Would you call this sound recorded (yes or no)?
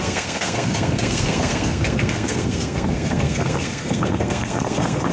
no